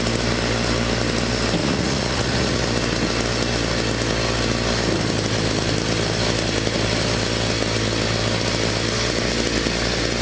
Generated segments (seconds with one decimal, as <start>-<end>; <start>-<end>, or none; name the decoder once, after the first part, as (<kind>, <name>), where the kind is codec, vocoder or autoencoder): 1.6-2.6 (vocoder, Vocos)